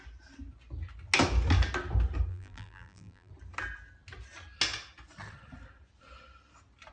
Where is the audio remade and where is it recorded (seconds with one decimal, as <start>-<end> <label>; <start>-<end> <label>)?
0.0-2.3 recorded; 2.3-3.3 remade; 3.3-6.9 recorded